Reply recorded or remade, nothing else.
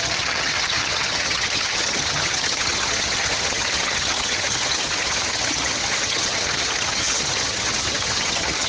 remade